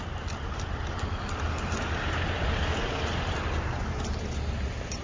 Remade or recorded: recorded